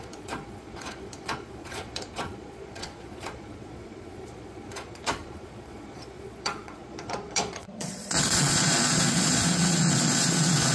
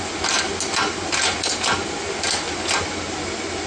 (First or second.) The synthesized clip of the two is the first